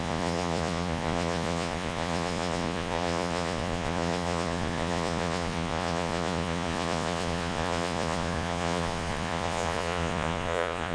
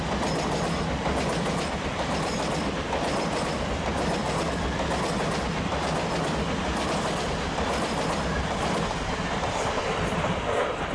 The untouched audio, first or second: second